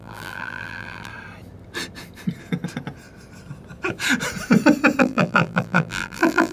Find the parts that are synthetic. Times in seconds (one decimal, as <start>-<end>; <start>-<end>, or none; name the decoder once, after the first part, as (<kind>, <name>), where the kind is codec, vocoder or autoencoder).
0.0-1.1 (vocoder, BigVGAN v2); 5.0-6.5